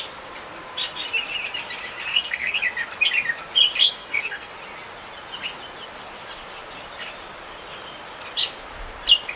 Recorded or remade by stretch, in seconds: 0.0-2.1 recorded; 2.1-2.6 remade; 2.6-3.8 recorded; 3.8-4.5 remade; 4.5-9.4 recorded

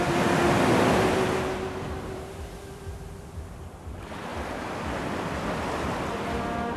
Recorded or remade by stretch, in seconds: 0.0-6.8 recorded

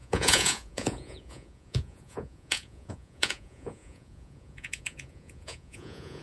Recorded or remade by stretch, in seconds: 0.0-6.2 remade

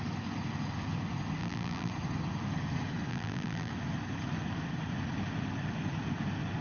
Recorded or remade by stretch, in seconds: 0.0-1.4 recorded; 1.4-1.9 remade; 1.9-3.1 recorded; 3.1-3.7 remade; 3.7-6.6 recorded